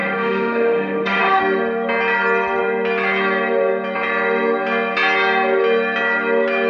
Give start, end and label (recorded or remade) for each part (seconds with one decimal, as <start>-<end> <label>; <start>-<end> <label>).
0.0-1.4 remade; 1.4-6.7 recorded